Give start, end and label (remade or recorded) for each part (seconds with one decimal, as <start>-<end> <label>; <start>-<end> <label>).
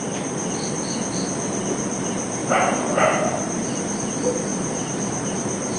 0.0-2.4 recorded; 2.4-4.0 remade; 4.0-4.5 recorded; 4.5-5.3 remade; 5.3-5.8 recorded